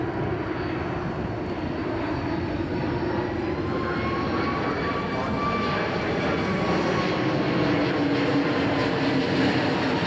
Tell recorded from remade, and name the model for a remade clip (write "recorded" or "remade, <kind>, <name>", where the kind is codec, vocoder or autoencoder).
recorded